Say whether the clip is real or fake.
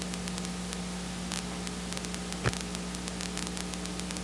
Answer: real